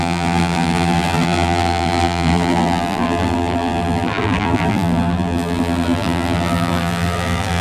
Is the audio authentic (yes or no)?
no